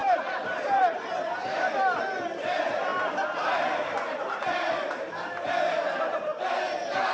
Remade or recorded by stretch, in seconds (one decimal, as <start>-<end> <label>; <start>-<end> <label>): 0.0-1.7 remade; 1.7-2.9 recorded; 2.9-5.6 remade; 5.6-7.1 recorded